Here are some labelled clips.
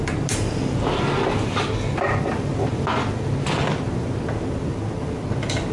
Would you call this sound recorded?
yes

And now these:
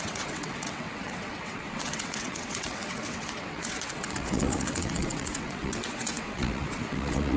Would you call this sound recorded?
no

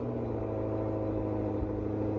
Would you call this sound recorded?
yes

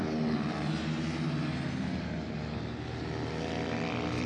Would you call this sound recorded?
yes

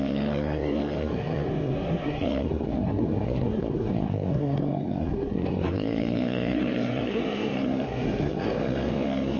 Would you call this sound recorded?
no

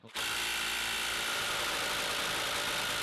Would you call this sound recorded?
yes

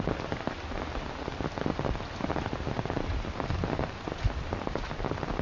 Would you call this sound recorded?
yes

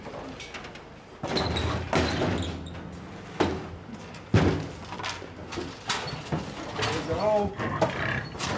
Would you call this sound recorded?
yes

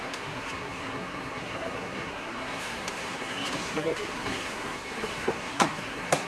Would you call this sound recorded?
no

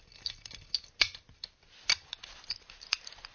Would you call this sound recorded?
yes